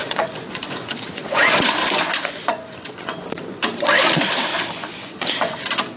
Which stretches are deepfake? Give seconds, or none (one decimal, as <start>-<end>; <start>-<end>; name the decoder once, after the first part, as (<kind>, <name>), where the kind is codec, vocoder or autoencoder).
0.0-1.2 (vocoder, Vocos); 1.8-3.6; 4.5-5.6